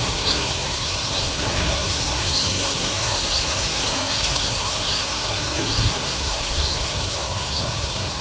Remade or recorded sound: remade